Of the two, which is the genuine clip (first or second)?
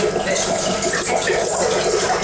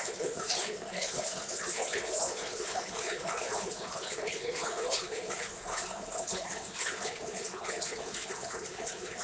first